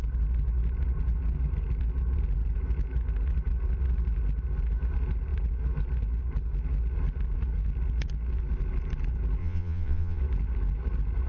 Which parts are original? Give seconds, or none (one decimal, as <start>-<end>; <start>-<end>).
0.0-9.4; 10.2-11.3